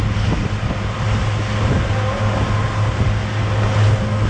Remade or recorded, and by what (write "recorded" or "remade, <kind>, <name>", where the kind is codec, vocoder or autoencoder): recorded